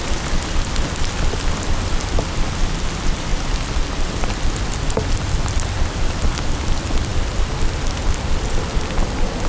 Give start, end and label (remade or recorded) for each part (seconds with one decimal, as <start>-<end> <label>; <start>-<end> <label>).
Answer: 0.0-9.5 recorded